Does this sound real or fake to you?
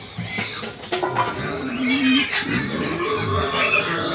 real